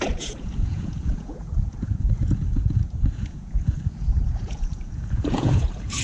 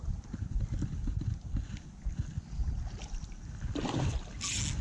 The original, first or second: second